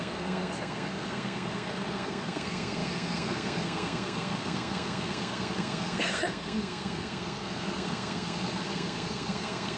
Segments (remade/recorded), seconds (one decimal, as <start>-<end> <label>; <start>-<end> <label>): 0.0-9.8 remade